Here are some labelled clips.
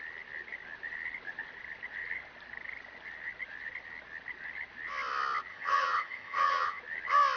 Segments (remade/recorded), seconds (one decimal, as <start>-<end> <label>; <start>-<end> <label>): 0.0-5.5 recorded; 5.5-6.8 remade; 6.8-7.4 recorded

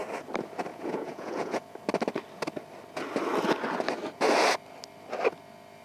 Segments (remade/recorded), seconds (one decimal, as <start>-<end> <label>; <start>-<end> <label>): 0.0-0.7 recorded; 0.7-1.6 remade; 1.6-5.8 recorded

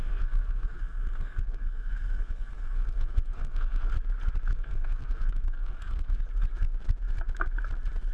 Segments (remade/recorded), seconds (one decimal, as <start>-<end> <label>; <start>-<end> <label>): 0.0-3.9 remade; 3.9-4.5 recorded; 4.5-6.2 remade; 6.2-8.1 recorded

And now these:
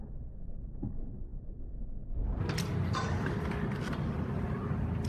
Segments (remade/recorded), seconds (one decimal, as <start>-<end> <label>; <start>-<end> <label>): 0.0-1.3 remade; 1.3-2.5 recorded; 2.5-5.1 remade

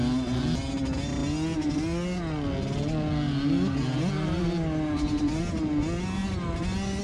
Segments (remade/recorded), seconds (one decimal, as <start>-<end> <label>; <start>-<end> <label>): 0.0-7.0 recorded

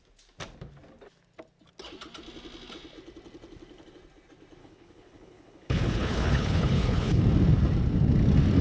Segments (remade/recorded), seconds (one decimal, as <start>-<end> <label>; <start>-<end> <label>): 0.0-4.6 recorded; 4.6-7.2 remade; 7.2-8.6 recorded

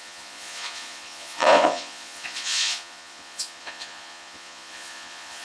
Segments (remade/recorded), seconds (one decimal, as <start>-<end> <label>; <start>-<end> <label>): 0.0-5.4 remade

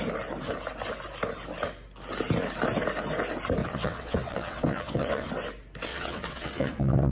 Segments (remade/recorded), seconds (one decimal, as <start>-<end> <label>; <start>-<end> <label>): 0.0-3.6 recorded; 3.6-5.3 remade; 5.3-5.9 recorded; 5.9-7.1 remade